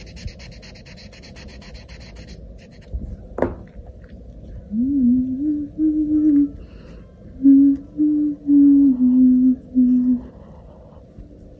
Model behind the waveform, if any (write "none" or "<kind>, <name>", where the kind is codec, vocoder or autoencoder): none